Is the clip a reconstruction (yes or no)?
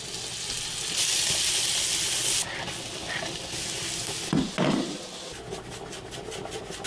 no